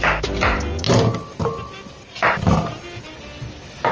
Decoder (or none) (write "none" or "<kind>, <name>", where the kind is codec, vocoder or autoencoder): none